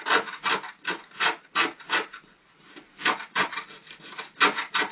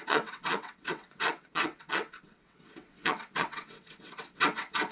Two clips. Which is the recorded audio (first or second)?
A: first